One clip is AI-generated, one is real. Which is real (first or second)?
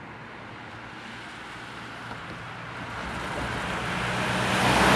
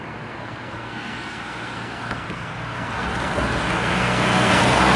first